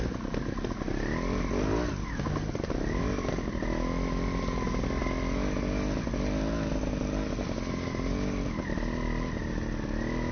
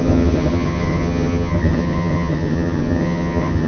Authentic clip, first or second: first